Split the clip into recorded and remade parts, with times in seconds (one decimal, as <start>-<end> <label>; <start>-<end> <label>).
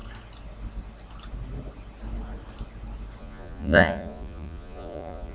0.0-3.2 recorded; 3.2-5.3 remade